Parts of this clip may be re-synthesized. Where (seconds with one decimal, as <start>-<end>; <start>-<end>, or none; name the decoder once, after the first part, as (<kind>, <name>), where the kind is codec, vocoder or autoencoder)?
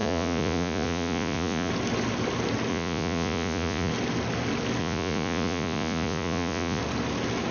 0.0-1.7 (vocoder, Vocos); 2.7-3.9; 4.8-6.8